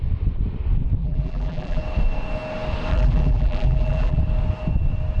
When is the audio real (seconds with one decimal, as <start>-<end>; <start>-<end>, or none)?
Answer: 0.0-1.0; 1.8-2.9; 4.2-5.2